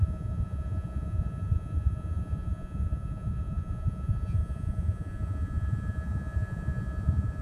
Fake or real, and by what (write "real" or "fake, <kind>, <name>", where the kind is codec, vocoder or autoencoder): fake, vocoder, Vocos